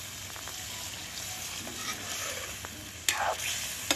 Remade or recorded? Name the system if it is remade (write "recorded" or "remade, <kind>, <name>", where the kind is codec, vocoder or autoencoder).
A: recorded